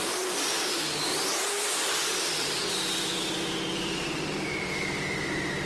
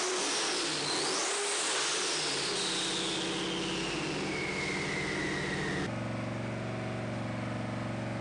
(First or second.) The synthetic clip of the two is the first